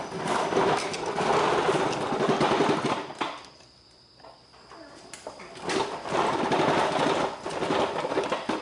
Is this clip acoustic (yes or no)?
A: no